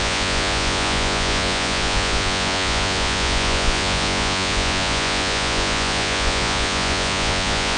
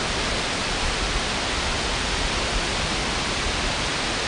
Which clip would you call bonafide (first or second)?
second